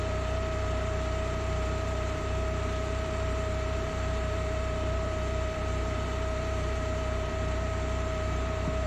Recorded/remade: remade